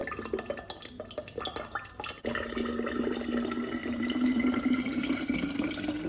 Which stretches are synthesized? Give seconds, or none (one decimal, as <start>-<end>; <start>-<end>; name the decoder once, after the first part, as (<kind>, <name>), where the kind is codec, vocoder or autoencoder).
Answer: 3.8-5.0 (vocoder, BigVGAN v2)